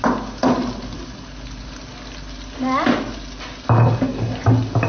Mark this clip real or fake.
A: real